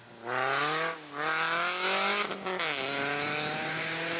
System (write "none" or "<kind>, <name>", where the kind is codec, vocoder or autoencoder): none